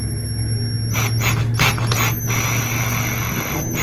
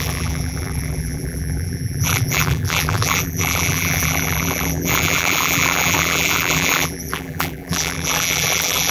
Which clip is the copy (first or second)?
second